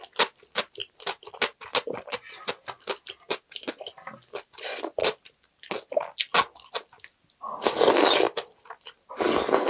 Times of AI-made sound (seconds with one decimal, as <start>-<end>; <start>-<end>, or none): 0.8-1.3; 5.0-5.7